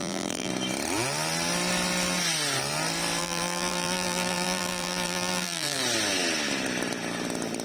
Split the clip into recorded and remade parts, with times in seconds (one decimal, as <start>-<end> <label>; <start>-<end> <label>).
0.0-0.5 remade; 0.5-3.2 recorded; 3.2-5.8 remade; 5.8-7.6 recorded